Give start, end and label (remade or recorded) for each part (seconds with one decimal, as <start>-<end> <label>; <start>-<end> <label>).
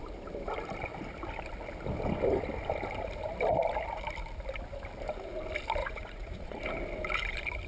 0.0-5.8 recorded; 5.8-6.6 remade; 6.6-7.7 recorded